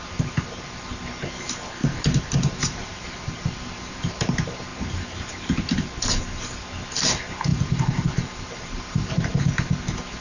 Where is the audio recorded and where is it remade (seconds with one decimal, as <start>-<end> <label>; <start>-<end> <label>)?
0.0-1.8 recorded; 1.8-4.3 remade; 4.3-7.5 recorded; 7.5-9.4 remade; 9.4-10.2 recorded